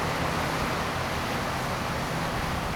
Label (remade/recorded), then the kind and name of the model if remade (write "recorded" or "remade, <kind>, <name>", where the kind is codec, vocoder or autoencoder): recorded